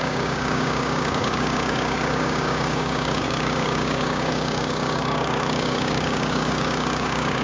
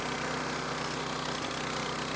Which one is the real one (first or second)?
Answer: second